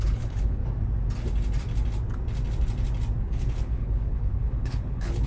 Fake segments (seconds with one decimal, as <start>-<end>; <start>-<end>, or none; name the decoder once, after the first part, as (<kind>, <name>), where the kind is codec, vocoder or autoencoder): 0.0-0.6 (codec, HILCodec); 3.2-5.3